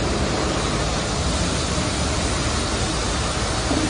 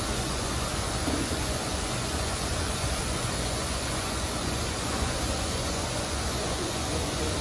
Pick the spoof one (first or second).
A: second